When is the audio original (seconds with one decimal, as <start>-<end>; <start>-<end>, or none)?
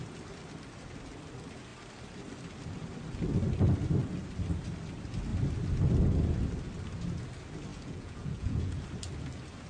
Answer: 0.0-7.7; 8.8-9.7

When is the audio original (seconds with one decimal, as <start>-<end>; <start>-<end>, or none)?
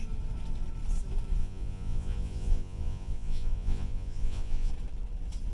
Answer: 0.0-1.4; 4.7-5.5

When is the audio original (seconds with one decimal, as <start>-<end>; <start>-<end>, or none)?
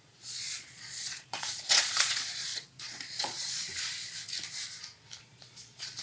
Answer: 3.7-5.2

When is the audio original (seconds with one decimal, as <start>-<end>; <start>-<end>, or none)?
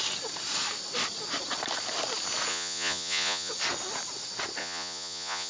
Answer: 0.0-2.5; 3.5-4.6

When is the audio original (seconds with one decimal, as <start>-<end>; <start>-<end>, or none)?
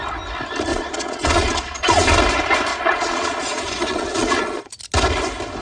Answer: 0.0-0.7; 2.2-2.7; 4.7-5.6